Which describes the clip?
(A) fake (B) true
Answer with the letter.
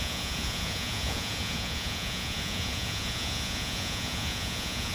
A